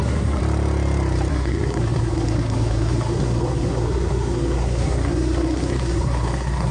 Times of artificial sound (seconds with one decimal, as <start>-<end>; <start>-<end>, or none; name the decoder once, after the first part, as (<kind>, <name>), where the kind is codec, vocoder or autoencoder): 0.0-0.4 (codec, SNAC); 1.3-6.7